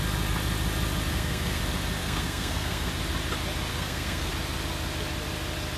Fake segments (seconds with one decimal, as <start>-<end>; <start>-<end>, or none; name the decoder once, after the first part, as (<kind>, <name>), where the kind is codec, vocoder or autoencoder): 1.1-1.6 (codec, SNAC); 2.0-2.9; 3.7-4.3